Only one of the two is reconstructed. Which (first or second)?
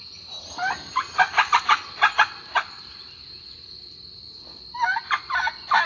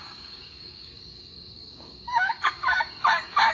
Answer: second